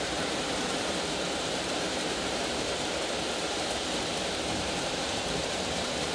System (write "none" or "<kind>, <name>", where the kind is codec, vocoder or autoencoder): vocoder, BigVGAN v2